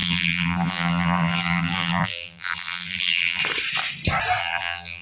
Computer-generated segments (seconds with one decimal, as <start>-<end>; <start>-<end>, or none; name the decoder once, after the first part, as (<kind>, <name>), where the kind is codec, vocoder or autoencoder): 0.0-3.4 (vocoder, BigVGAN v2); 4.4-5.0